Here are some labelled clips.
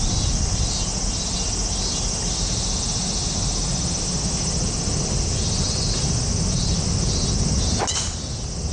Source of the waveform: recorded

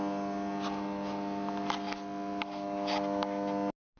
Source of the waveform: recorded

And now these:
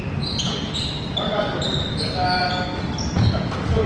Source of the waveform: recorded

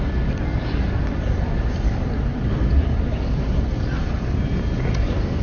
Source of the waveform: recorded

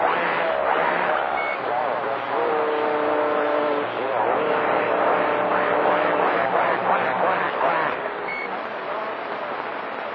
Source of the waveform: recorded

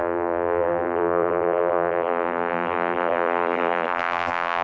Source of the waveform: remade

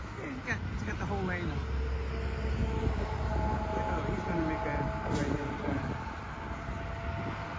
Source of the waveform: recorded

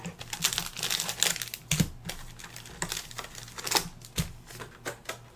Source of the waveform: recorded